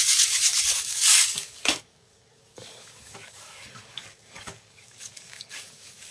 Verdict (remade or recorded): remade